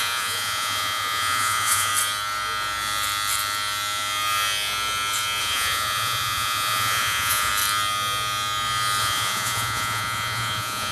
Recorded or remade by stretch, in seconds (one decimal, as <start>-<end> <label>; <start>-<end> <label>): 0.0-1.9 remade; 1.9-5.4 recorded; 5.4-7.5 remade; 7.5-9.0 recorded; 9.0-10.9 remade